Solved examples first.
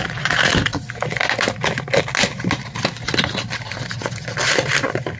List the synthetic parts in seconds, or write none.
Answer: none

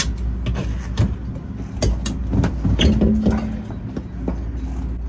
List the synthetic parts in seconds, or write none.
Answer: none

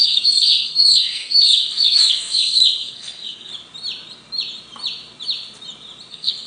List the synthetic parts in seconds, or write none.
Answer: 0.0-3.5 (codec, SNAC); 6.1-6.5

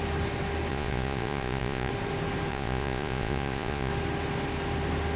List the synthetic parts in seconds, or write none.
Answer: 0.7-1.9 (vocoder, Vocos); 2.5-3.9

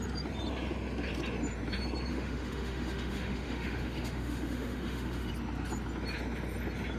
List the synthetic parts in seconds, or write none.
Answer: 2.1-5.3 (autoencoder, DAC-VAE)